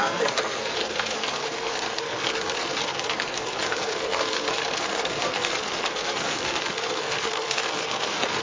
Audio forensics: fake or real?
fake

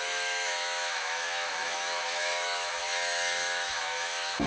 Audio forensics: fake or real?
fake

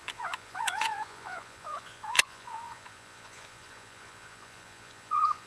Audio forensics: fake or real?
fake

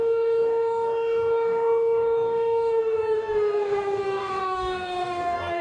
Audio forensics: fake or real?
fake